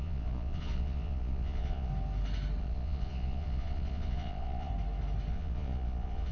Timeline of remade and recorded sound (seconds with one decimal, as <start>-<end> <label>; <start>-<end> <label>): 0.0-1.9 remade; 1.9-2.6 recorded; 2.6-4.7 remade; 4.7-5.3 recorded; 5.3-6.3 remade